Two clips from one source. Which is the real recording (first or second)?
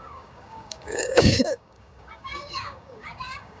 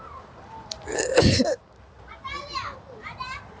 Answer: second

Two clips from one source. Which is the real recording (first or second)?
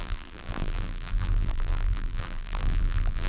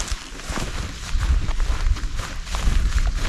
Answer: second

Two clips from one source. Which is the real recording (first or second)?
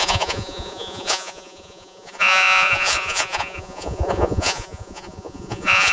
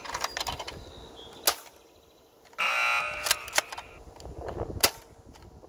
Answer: second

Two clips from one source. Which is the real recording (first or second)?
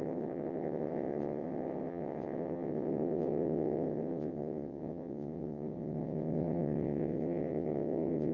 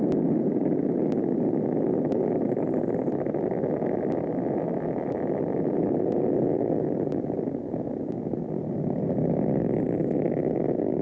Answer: second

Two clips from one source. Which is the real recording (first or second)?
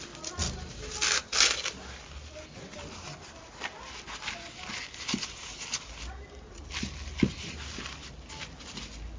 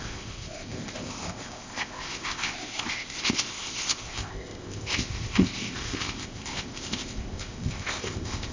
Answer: first